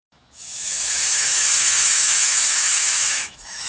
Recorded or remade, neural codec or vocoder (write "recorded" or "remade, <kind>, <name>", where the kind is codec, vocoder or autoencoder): remade, autoencoder, DAC-VAE